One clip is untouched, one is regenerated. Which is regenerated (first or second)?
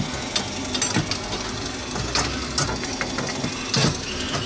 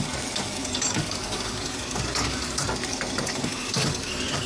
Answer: second